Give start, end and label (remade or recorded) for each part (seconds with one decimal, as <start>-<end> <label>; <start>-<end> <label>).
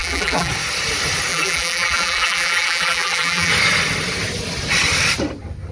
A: 0.0-0.5 remade; 0.5-1.3 recorded; 1.3-3.5 remade; 3.5-5.7 recorded